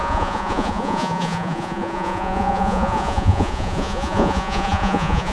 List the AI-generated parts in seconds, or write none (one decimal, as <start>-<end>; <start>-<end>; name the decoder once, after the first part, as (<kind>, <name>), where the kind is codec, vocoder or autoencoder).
0.0-5.3 (vocoder, Vocos)